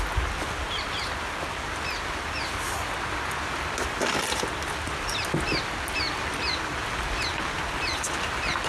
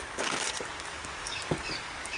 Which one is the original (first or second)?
first